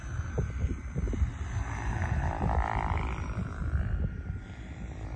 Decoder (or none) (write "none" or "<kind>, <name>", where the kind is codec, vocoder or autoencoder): none